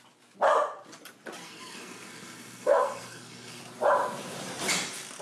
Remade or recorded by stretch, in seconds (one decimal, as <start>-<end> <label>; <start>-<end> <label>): 0.0-1.4 recorded; 1.4-3.6 remade; 3.6-5.2 recorded